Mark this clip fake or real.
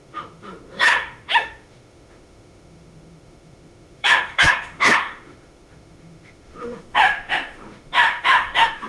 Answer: fake